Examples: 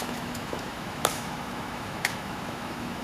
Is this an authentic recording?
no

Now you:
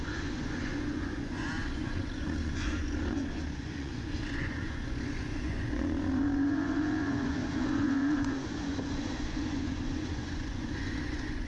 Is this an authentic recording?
no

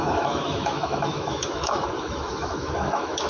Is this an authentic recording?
no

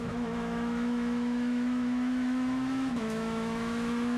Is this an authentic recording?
no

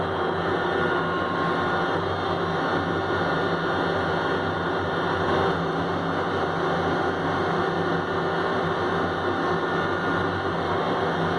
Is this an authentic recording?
yes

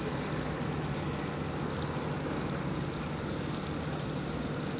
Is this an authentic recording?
yes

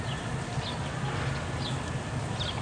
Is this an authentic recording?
yes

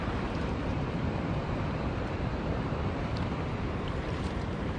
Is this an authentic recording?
no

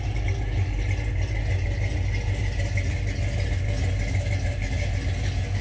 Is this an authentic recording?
yes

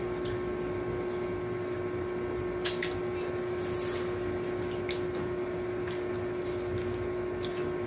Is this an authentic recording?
yes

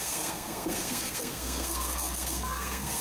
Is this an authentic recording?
no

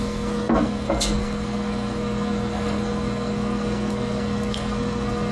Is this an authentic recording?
no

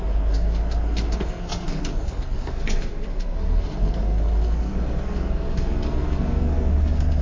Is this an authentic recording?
no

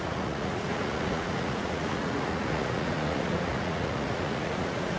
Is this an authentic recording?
no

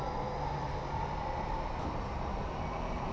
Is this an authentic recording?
no